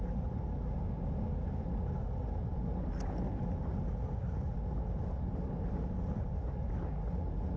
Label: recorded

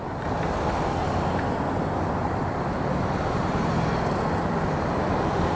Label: recorded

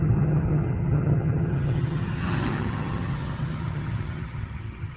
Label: remade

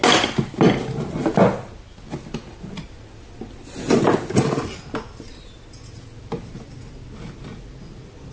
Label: recorded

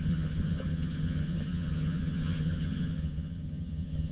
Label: remade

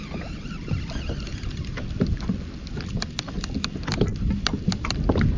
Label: recorded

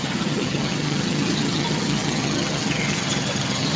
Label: remade